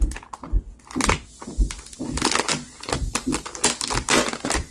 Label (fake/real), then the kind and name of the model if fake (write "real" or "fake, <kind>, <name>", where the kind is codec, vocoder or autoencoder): real